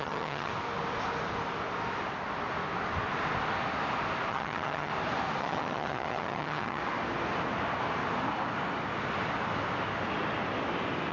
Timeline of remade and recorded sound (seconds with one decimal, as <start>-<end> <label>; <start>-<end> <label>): 0.0-0.5 remade; 0.5-4.3 recorded; 4.3-4.9 remade; 4.9-5.4 recorded; 5.4-6.8 remade; 6.8-11.1 recorded